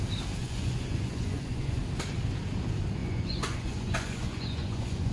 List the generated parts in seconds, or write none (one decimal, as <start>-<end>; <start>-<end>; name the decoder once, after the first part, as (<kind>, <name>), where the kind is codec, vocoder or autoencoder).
0.4-1.8 (vocoder, Vocos); 3.0-5.1